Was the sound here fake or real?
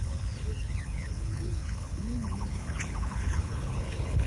fake